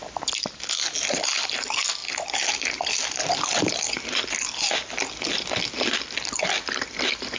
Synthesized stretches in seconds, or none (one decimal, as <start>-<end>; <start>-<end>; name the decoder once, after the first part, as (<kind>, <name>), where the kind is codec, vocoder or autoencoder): 0.0-0.6 (vocoder, BigVGAN v2); 2.0-6.4